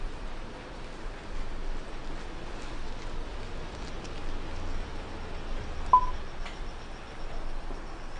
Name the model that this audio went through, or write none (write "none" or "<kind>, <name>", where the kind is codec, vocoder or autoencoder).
none